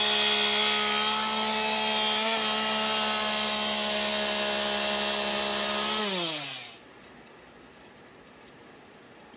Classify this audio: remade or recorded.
recorded